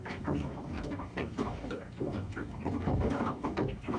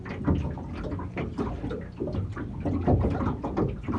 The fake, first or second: first